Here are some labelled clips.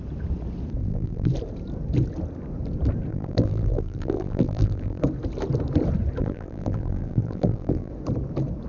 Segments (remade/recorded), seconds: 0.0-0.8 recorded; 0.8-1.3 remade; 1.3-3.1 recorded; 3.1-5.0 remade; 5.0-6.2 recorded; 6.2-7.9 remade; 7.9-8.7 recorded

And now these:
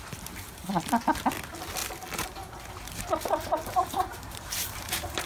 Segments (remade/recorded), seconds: 0.0-4.1 recorded; 4.1-5.3 remade

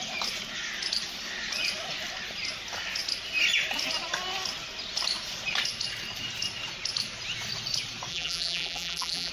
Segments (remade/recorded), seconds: 0.0-8.1 recorded; 8.1-9.3 remade

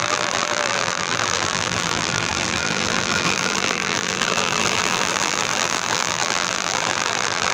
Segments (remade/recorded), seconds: 0.0-7.5 remade

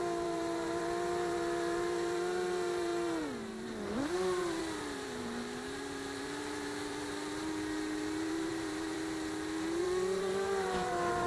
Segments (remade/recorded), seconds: 0.0-11.3 remade

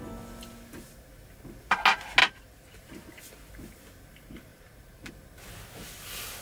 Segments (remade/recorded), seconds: 0.0-2.2 recorded; 2.2-3.1 remade; 3.1-4.5 recorded; 4.5-5.1 remade; 5.1-6.4 recorded

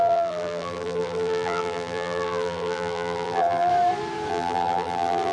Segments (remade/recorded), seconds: 0.0-3.7 remade; 3.7-4.3 recorded; 4.3-5.3 remade